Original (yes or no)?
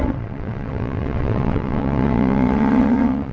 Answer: no